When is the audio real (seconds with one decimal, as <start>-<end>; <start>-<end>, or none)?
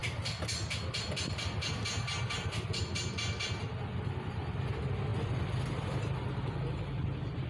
0.0-7.5